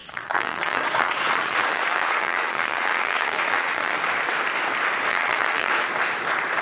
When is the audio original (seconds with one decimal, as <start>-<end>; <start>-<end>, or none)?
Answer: 4.0-5.1; 5.7-6.6